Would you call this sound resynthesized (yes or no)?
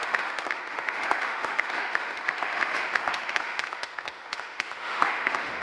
yes